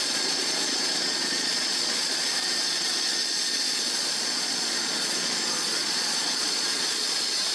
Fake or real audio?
fake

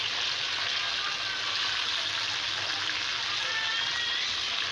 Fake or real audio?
real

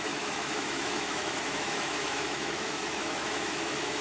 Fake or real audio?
fake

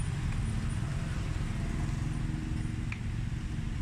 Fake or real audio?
real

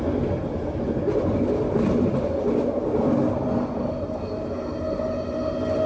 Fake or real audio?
real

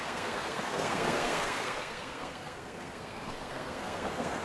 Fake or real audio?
fake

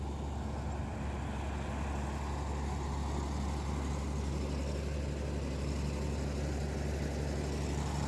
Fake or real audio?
real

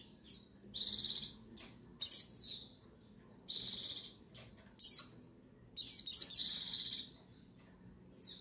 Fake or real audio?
real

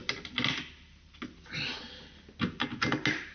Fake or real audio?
real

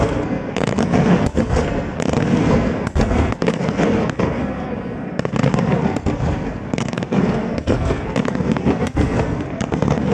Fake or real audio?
fake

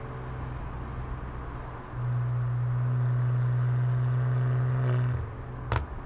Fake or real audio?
real